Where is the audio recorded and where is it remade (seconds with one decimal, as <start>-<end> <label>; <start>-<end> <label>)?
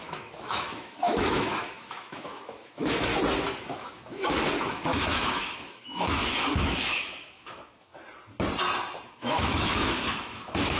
0.0-3.1 remade; 3.1-3.6 recorded; 3.6-7.9 remade; 7.9-9.1 recorded; 9.1-10.8 remade